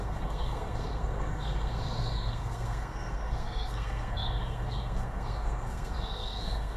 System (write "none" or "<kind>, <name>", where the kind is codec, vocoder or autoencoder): codec, SNAC